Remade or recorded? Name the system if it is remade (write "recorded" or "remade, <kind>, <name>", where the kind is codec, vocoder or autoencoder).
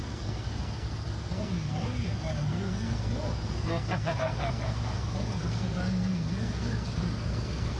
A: remade, codec, SNAC